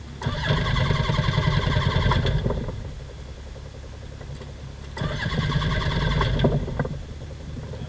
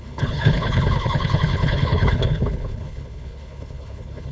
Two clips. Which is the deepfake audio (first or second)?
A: second